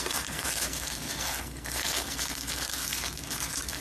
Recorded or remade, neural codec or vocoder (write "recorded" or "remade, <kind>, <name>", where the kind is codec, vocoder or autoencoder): remade, codec, SNAC